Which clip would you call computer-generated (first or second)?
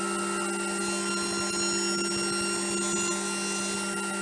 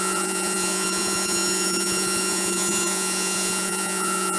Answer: second